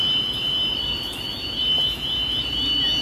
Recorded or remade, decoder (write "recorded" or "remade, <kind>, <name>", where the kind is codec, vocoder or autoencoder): recorded